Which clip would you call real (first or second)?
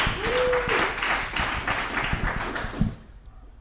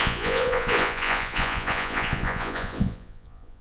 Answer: first